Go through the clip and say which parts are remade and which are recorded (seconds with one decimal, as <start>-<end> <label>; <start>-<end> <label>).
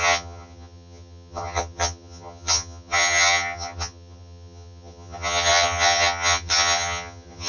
0.0-7.5 remade